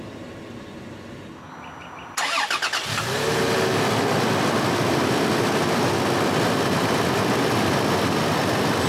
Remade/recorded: recorded